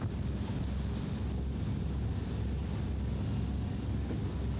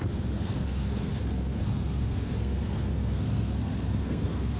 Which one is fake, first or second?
second